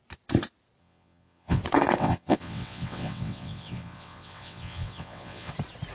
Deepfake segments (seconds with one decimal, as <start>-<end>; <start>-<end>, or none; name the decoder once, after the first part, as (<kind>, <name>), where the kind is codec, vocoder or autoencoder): 0.8-1.6 (vocoder, WaveNeXt); 2.0-5.5